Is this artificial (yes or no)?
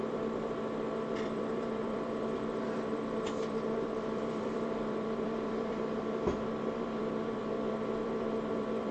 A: yes